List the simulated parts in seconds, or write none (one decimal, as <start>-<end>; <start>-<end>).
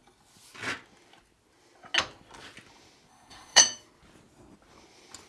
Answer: 3.1-3.6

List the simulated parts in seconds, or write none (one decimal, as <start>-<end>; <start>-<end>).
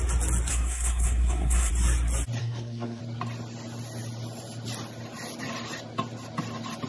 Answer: 0.5-1.7; 2.4-3.0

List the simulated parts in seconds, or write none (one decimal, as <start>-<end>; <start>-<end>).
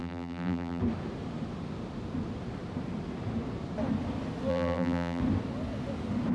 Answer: 0.0-0.8; 4.5-5.2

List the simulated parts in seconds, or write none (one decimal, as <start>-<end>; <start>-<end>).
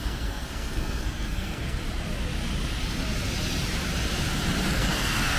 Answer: 0.0-1.8; 4.7-5.4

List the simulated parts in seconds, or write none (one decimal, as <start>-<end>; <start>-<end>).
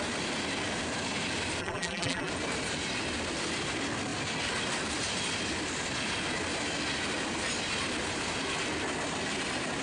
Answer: 1.6-2.3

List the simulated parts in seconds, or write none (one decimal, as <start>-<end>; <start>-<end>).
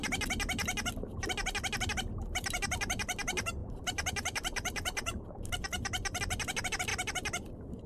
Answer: 2.1-6.9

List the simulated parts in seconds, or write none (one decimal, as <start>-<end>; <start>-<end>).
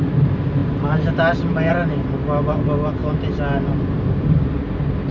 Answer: 0.6-1.7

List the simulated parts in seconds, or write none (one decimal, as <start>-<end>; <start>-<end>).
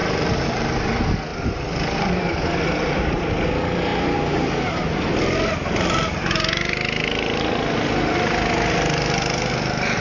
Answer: 0.0-0.7; 1.3-3.5